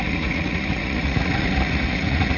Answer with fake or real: fake